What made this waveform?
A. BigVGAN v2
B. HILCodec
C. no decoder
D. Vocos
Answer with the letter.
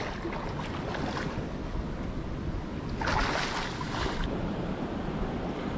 C